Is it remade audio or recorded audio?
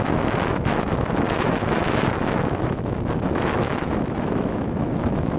remade